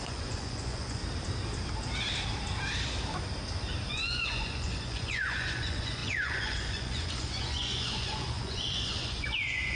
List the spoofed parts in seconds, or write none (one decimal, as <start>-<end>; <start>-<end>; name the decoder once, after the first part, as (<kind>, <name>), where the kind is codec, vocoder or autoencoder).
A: 0.0-1.0 (vocoder, Vocos); 3.9-9.8